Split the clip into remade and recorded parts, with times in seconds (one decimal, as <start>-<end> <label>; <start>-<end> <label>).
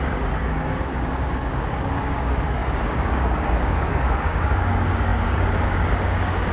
0.0-6.5 remade